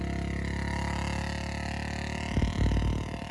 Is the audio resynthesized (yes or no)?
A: no